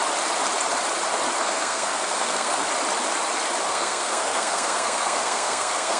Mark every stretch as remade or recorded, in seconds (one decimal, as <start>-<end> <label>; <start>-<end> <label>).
0.0-1.4 recorded; 1.4-2.6 remade; 2.6-3.7 recorded; 3.7-6.0 remade